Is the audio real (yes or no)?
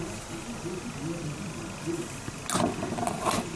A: yes